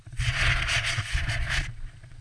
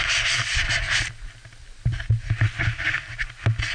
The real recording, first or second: second